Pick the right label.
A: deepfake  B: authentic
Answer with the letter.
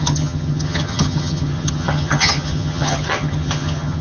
A